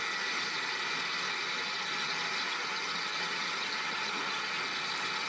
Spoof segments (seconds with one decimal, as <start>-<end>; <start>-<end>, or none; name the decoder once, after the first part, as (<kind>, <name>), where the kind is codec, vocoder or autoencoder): 2.5-4.6 (vocoder, HiFi-GAN)